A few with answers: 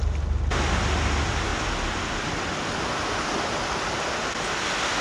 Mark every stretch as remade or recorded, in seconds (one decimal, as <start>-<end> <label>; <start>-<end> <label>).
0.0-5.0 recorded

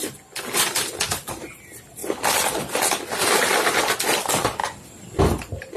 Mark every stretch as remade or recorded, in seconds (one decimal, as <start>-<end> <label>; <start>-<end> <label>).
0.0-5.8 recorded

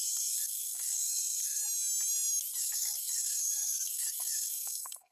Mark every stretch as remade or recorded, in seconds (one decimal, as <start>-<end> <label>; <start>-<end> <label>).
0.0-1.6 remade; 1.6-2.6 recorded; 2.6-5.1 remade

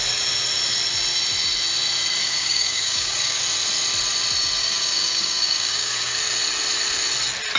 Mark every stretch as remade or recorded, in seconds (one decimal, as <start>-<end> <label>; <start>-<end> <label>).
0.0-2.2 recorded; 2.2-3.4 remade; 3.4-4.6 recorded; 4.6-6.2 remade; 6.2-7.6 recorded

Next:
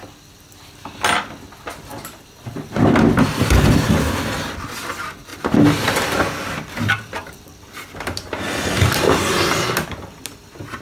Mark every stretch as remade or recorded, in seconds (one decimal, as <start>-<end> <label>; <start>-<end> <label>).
0.0-1.9 recorded; 1.9-3.4 remade; 3.4-5.3 recorded; 5.3-10.2 remade; 10.2-10.8 recorded

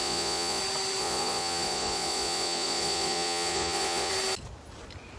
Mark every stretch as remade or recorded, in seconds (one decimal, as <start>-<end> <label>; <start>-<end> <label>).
0.0-0.6 remade; 0.6-1.0 recorded; 1.0-4.1 remade; 4.1-5.2 recorded